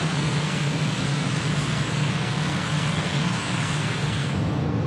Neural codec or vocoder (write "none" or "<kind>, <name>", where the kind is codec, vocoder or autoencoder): codec, SNAC